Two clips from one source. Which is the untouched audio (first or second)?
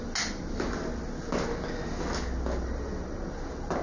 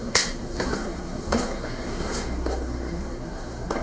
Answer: first